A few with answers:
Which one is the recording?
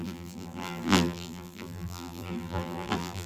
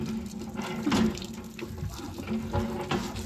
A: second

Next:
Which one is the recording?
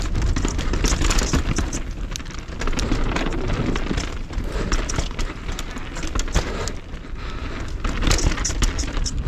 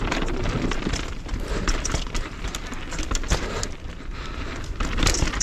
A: first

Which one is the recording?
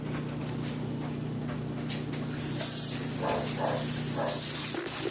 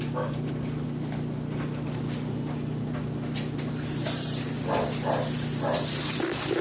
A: first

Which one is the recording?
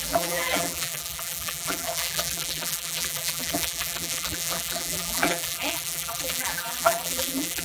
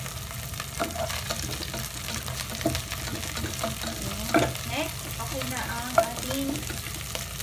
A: second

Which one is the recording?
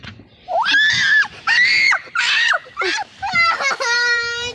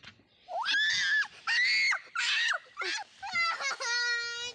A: second